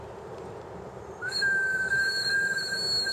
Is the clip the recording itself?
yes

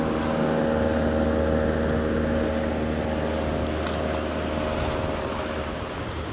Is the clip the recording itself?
yes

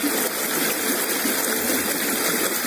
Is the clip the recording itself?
yes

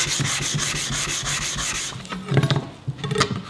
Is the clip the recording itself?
yes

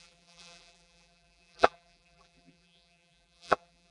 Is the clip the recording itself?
no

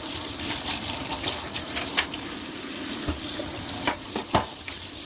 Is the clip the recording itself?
no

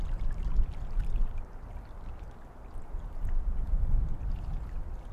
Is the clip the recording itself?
yes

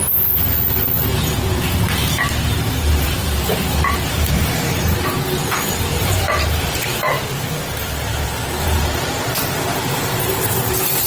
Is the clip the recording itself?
no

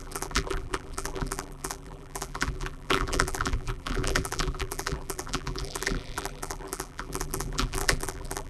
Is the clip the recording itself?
no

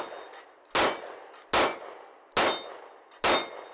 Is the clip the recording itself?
yes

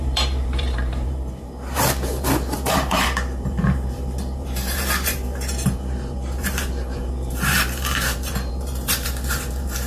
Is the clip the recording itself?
no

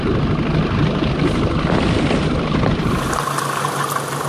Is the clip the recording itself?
yes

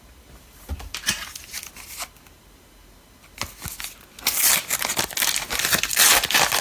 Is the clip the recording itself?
yes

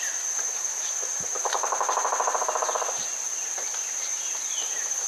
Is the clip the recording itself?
no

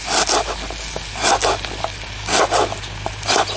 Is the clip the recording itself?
yes